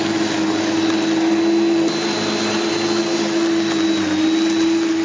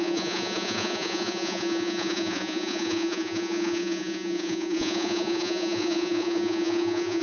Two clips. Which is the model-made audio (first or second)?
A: second